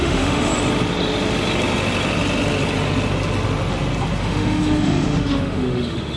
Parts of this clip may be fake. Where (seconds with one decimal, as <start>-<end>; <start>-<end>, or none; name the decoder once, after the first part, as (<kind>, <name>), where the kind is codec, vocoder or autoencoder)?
0.0-0.5 (autoencoder, DAC-VAE); 4.2-6.2